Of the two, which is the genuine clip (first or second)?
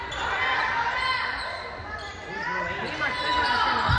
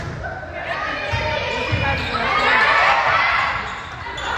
second